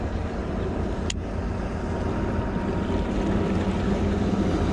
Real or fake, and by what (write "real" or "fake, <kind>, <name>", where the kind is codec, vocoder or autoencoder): real